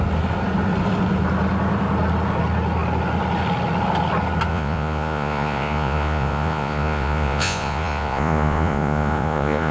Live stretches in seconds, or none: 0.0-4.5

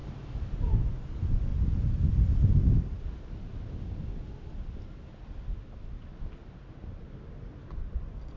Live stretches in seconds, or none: 0.0-8.4

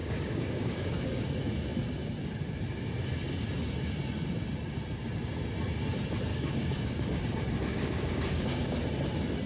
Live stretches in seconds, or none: 1.2-6.3; 7.2-7.7; 8.6-9.5

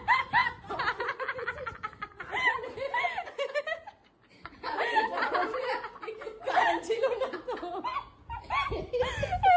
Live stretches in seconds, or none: 0.0-9.6

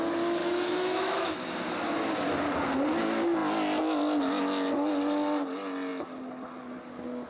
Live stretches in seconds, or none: 0.0-0.4; 1.5-7.3